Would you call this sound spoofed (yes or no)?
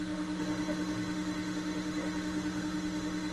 yes